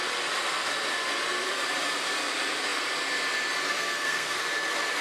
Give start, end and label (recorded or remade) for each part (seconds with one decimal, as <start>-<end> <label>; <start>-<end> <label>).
0.0-3.7 recorded; 3.7-4.4 remade; 4.4-5.0 recorded